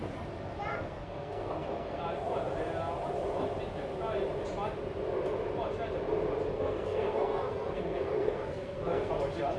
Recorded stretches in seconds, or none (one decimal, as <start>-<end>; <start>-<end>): 0.0-0.7; 2.0-6.5; 9.1-9.6